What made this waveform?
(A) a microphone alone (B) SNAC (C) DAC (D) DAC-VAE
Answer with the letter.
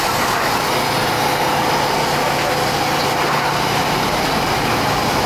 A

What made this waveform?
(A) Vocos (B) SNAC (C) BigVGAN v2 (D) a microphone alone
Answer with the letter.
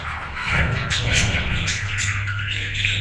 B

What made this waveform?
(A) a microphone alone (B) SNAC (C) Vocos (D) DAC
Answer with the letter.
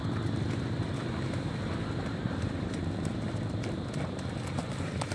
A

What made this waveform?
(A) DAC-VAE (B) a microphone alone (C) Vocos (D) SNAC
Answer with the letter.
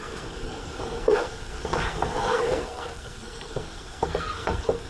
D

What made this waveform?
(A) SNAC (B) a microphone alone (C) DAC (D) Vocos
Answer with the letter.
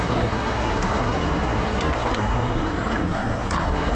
A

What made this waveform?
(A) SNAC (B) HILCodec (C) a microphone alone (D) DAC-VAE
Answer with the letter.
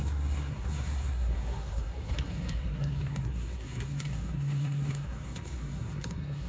A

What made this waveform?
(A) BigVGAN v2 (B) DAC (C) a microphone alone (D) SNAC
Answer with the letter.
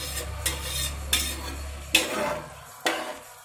C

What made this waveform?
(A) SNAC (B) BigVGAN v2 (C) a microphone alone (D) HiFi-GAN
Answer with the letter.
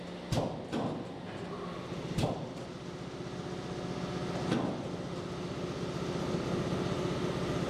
C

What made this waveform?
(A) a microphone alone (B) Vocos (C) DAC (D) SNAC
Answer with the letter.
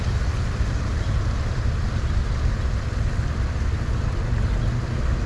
A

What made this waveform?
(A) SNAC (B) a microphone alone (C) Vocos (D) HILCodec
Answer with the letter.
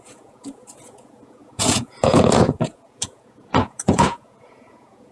C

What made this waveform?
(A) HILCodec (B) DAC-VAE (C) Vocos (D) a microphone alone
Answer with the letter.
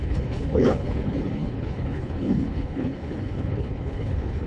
A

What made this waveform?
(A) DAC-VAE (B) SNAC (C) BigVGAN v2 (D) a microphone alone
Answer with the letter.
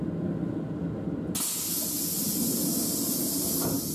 D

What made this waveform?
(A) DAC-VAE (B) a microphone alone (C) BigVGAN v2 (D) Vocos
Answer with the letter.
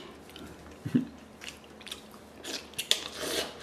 B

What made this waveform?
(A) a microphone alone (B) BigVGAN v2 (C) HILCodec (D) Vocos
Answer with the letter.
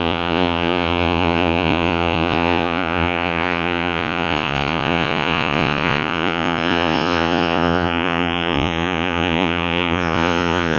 D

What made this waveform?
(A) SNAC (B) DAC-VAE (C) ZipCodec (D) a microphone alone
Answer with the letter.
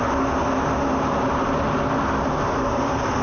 D